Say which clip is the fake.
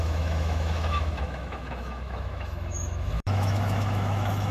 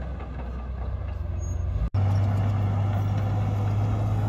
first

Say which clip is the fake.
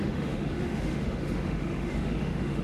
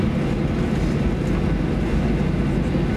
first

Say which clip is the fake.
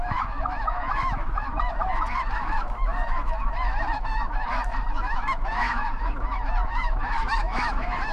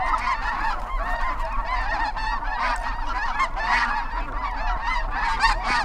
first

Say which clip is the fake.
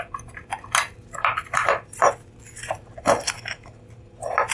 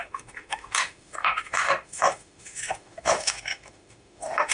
second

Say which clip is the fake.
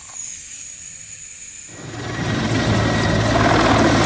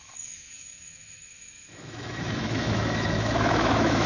second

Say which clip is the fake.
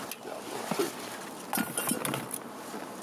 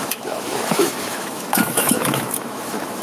second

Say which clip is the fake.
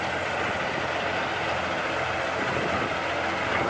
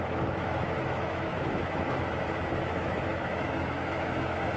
second